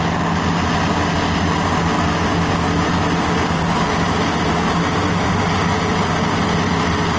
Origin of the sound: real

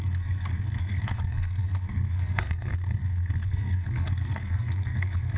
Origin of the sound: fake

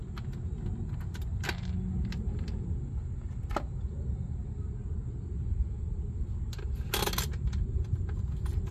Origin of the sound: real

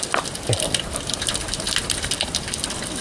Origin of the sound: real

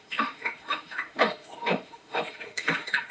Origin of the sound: fake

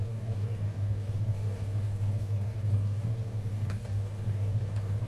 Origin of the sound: fake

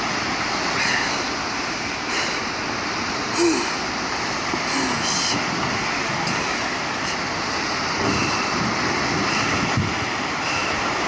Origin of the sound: real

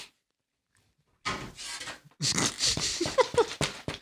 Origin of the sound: real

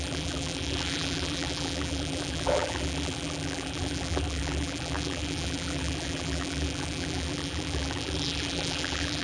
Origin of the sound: fake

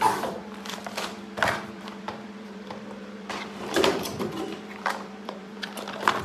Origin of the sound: fake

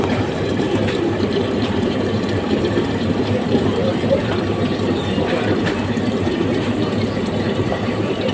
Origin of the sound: fake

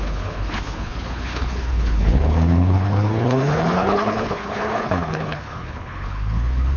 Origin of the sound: fake